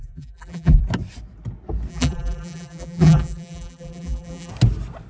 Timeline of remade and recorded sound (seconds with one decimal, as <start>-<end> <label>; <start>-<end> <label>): 0.0-0.8 remade; 0.8-1.9 recorded; 1.9-4.5 remade; 4.5-5.1 recorded